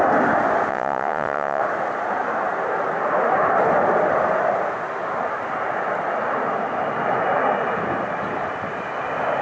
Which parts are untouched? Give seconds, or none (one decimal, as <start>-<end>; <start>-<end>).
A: 0.0-0.7; 1.6-9.4